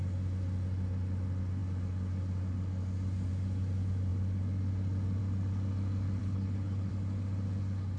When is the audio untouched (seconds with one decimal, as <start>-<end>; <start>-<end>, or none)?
0.0-6.2; 6.9-8.0